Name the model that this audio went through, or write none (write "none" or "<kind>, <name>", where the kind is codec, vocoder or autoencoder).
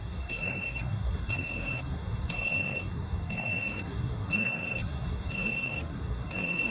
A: codec, SNAC